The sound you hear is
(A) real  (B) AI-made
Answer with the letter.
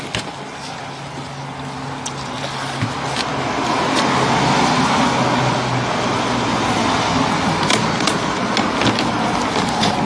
A